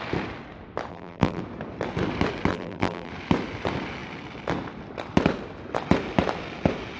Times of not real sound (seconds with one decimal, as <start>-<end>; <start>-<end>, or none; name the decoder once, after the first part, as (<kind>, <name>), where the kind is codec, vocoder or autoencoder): 0.9-1.4 (vocoder, BigVGAN v2); 2.5-3.1